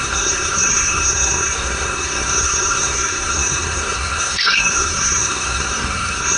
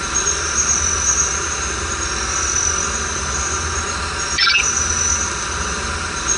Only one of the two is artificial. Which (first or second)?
first